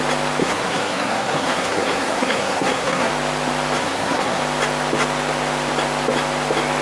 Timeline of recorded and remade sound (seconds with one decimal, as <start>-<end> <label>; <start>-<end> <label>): 0.0-0.4 recorded; 0.4-3.1 remade; 3.1-3.8 recorded; 3.8-4.4 remade; 4.4-6.8 recorded